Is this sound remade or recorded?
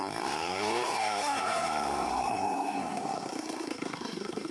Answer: remade